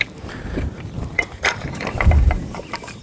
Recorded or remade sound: remade